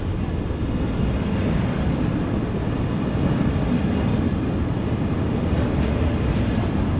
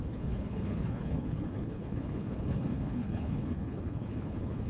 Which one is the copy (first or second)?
second